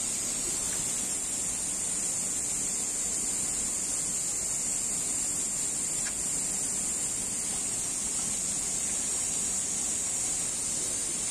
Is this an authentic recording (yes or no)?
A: yes